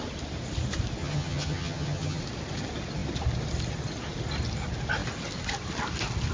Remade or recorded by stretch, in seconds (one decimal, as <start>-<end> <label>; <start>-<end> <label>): 0.0-1.0 recorded; 1.0-2.2 remade; 2.2-6.3 recorded